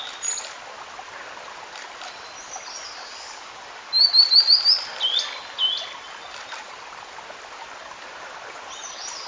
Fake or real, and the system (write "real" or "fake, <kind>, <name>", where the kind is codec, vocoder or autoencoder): real